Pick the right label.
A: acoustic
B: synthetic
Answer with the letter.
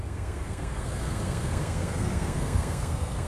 B